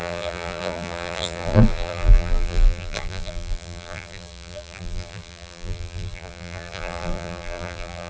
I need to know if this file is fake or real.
fake